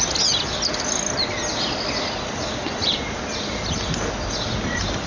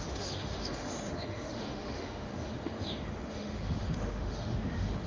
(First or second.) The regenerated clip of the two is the second